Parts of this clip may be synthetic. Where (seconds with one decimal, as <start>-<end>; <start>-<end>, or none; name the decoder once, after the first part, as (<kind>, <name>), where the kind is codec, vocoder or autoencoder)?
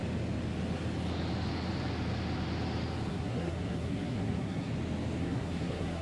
3.1-4.7 (codec, SNAC); 5.2-6.0